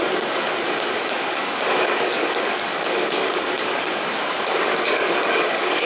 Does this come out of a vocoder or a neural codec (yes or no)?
yes